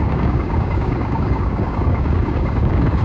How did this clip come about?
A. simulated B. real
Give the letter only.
A